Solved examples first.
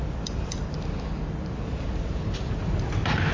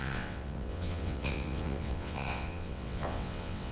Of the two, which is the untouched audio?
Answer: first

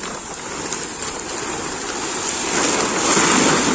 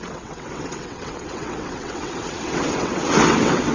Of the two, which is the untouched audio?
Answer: first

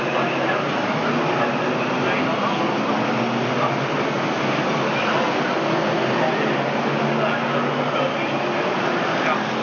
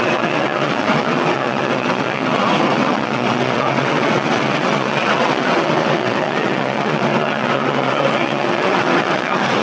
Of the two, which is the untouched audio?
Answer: first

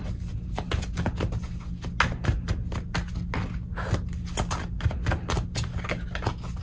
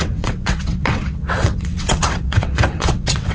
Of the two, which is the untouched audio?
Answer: first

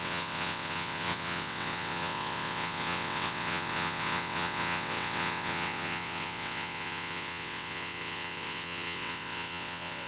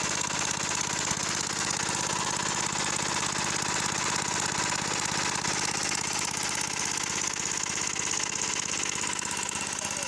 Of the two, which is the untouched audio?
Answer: second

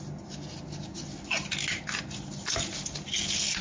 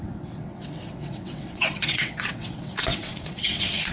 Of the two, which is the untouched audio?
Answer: first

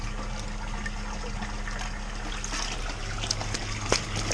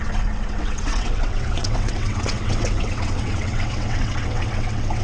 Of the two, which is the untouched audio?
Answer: first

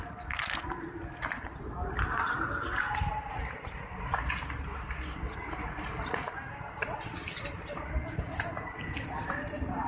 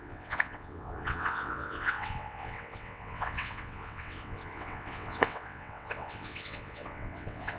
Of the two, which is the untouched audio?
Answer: first